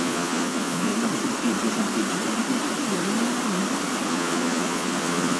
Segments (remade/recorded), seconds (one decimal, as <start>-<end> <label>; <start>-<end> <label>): 0.0-0.9 remade; 0.9-4.1 recorded; 4.1-5.4 remade